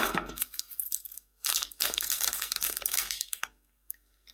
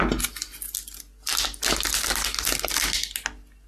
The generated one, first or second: first